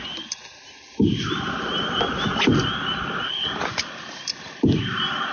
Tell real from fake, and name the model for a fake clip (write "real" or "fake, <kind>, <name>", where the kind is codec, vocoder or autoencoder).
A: real